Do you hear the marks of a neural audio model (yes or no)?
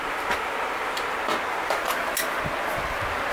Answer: no